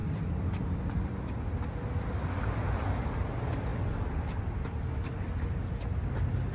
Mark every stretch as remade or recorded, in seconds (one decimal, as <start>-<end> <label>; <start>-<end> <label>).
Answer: 0.0-1.3 remade; 1.3-6.5 recorded